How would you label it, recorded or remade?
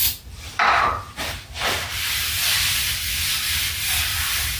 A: remade